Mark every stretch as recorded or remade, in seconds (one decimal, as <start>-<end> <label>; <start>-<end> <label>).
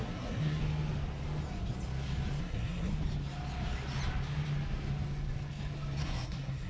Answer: 0.0-0.6 remade; 0.6-2.4 recorded; 2.4-2.9 remade; 2.9-6.0 recorded; 6.0-6.7 remade